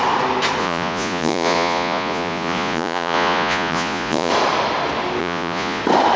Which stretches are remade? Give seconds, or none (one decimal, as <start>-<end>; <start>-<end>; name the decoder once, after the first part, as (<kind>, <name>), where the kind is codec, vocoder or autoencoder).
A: 0.6-4.3 (vocoder, Vocos); 5.2-5.8